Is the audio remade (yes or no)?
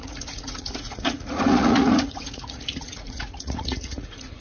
yes